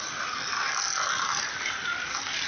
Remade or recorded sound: recorded